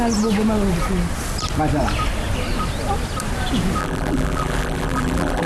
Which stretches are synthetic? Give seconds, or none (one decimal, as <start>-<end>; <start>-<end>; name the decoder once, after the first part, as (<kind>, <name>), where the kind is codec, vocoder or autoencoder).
3.8-5.5 (vocoder, BigVGAN v2)